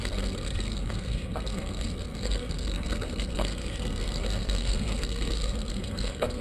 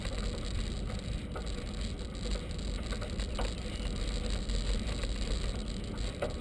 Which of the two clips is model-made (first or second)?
first